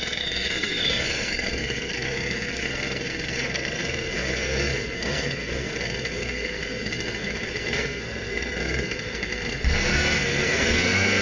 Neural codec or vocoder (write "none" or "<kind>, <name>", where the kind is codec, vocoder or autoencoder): codec, SNAC